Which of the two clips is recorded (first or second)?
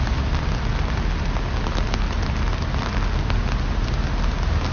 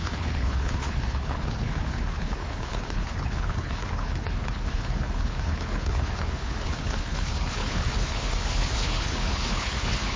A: first